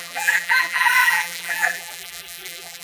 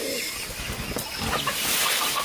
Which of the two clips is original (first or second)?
second